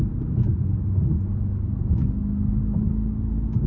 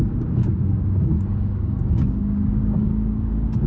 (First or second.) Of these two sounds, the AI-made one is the second